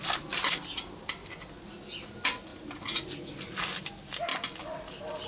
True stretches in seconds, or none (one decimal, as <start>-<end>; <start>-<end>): 0.0-5.3